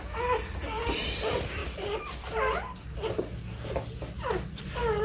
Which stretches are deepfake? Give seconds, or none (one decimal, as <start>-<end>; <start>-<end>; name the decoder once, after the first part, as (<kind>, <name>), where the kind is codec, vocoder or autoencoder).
none